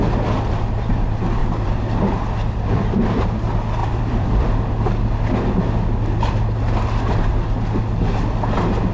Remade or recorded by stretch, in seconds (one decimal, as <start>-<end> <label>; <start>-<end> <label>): 0.0-1.4 recorded; 1.4-1.9 remade; 1.9-3.8 recorded; 3.8-4.6 remade; 4.6-8.9 recorded